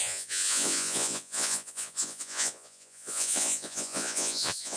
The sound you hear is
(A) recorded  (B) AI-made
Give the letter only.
B